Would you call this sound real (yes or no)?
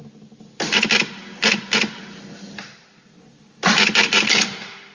yes